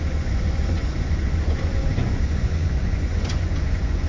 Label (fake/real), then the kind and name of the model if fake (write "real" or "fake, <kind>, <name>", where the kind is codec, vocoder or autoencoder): fake, vocoder, Vocos